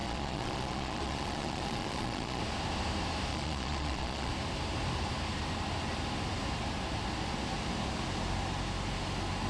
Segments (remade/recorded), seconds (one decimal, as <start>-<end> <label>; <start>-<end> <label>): 0.0-2.4 remade; 2.4-3.3 recorded; 3.3-4.3 remade; 4.3-9.5 recorded